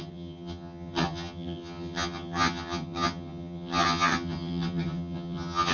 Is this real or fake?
fake